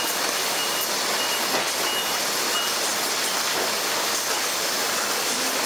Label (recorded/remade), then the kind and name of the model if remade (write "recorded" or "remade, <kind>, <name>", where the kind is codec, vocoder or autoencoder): recorded